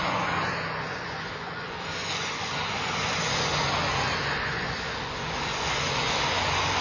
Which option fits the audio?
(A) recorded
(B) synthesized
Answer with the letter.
B